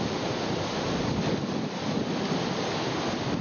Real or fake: real